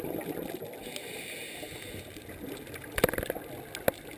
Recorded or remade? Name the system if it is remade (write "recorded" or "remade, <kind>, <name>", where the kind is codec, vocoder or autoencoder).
recorded